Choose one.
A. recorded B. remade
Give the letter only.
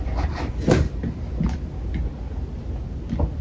A